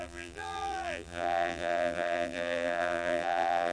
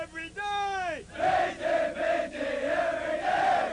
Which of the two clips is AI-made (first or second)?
first